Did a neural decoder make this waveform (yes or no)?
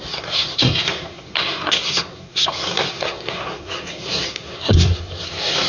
yes